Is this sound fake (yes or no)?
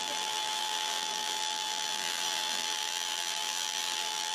yes